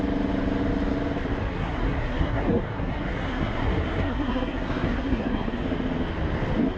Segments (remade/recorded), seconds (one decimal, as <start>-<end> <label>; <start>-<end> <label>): 0.0-1.5 recorded; 1.5-5.6 remade; 5.6-6.8 recorded